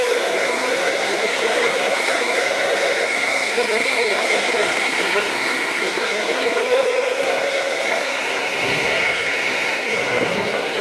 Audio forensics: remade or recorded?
remade